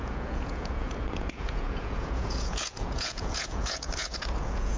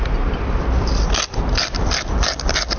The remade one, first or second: first